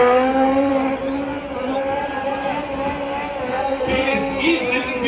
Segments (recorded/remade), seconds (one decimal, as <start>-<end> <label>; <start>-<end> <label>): 0.0-0.7 remade; 0.7-3.5 recorded; 3.5-4.5 remade; 4.5-5.1 recorded